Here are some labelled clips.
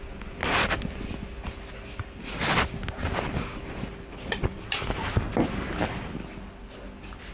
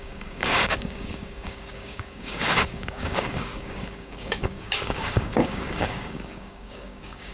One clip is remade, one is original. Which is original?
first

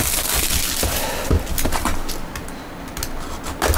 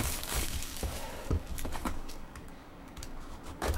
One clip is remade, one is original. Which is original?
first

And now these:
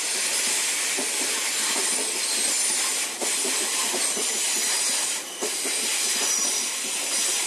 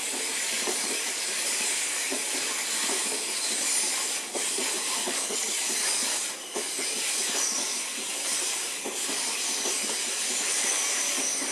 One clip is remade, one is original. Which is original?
first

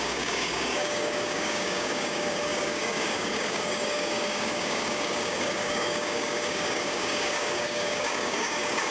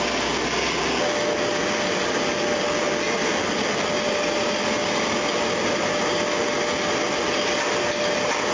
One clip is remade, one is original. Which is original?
second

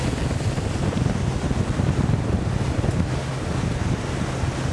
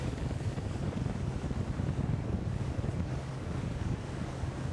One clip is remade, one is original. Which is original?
first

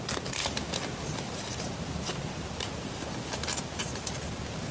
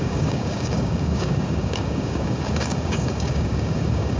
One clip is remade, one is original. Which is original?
first